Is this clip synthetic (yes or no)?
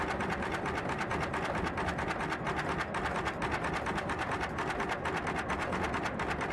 no